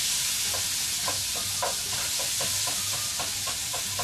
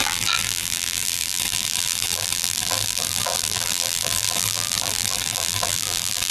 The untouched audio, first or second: first